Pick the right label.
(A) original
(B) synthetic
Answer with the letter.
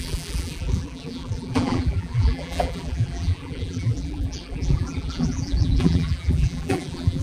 B